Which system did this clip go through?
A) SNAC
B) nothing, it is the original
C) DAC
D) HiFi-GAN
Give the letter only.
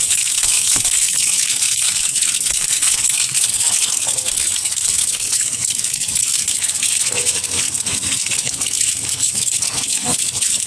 A